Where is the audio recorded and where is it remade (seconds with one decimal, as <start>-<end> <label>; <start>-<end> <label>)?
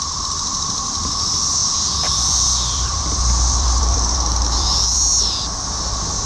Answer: 0.0-1.6 recorded; 1.6-5.4 remade; 5.4-6.3 recorded